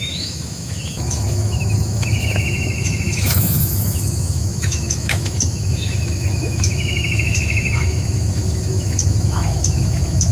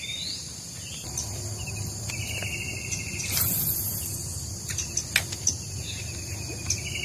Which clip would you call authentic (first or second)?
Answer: second